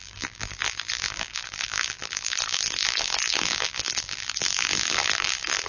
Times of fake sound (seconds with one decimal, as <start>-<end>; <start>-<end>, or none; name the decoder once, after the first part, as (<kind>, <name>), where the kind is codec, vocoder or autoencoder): 0.0-5.7 (vocoder, BigVGAN v2)